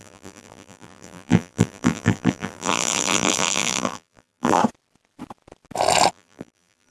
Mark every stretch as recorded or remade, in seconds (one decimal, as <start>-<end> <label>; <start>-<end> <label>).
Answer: 0.0-4.6 remade; 4.6-6.1 recorded; 6.1-6.9 remade